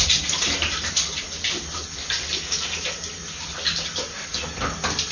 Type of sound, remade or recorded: recorded